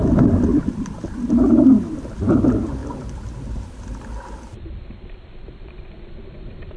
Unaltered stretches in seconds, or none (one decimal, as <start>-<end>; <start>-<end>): 0.0-0.5; 2.4-2.8